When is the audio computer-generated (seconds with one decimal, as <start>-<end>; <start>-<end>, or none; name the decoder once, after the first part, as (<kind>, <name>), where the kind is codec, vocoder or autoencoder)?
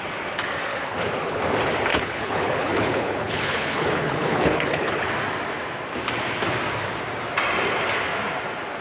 0.7-1.4 (codec, HILCodec); 1.9-5.1